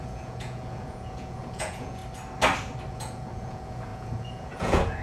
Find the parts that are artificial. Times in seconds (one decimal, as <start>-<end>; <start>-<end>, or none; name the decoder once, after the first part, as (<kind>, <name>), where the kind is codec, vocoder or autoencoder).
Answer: 0.0-2.0 (vocoder, Vocos); 2.9-5.0